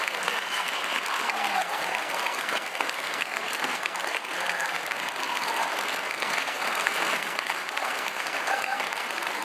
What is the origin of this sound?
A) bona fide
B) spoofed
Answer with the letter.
B